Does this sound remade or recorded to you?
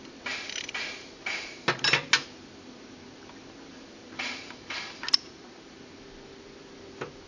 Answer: recorded